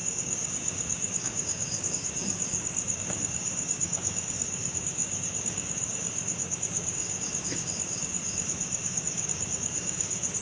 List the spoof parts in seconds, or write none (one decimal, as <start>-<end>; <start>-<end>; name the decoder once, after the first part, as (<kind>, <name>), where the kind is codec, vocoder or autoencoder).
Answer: 0.0-10.4 (codec, DAC)

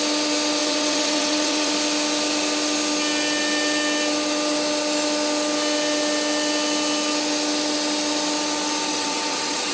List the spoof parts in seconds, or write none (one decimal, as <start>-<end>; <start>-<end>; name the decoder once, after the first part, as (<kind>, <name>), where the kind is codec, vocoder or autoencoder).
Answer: 0.6-1.7 (vocoder, WaveNeXt); 8.9-9.7

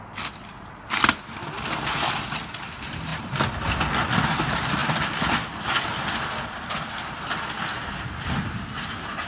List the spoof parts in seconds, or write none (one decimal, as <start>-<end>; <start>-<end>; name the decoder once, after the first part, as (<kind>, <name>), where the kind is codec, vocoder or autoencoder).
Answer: 3.1-3.8 (vocoder, BigVGAN v2)

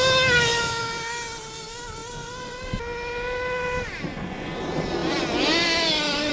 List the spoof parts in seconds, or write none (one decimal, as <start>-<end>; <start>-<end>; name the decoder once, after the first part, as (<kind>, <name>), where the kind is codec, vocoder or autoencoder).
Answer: 4.1-4.6 (vocoder, Vocos)

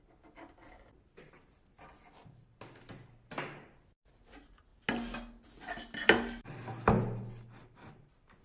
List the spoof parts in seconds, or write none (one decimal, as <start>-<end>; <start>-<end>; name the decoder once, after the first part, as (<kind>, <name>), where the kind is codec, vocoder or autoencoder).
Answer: none

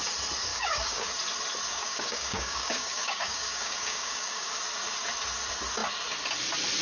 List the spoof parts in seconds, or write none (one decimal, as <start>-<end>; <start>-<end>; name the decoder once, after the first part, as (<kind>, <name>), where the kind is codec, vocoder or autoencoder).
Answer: 0.5-1.1 (codec, DAC); 1.7-4.6